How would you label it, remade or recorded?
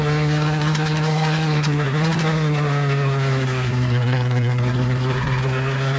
remade